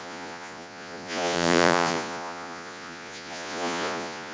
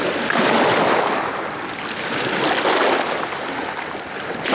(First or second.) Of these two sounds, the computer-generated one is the first